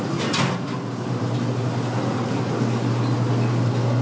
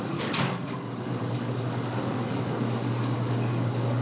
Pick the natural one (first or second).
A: first